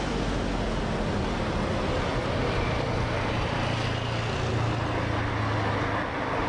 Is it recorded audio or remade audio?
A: recorded